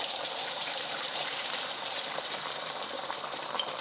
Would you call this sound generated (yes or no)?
yes